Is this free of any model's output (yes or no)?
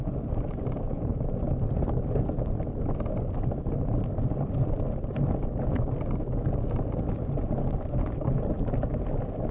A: yes